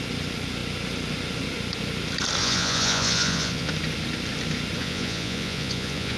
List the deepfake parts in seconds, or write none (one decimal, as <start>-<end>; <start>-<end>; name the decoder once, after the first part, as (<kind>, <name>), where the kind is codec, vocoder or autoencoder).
2.4-3.7 (vocoder, Vocos); 4.8-6.2